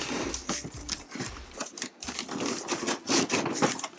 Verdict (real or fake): real